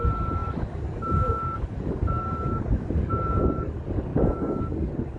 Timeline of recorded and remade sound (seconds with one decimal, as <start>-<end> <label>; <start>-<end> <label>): 0.0-5.2 remade